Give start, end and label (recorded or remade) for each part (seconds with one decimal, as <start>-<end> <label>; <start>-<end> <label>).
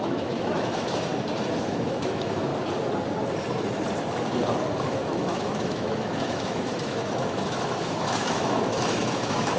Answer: 0.0-1.1 remade; 1.1-1.6 recorded; 1.6-2.5 remade; 2.5-4.9 recorded; 4.9-9.6 remade